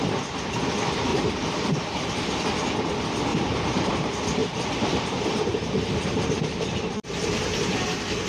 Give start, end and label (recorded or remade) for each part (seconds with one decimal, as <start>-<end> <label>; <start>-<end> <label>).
0.0-1.1 recorded; 1.1-2.3 remade; 2.3-3.3 recorded; 3.3-3.9 remade; 3.9-4.4 recorded; 4.4-7.8 remade; 7.8-8.3 recorded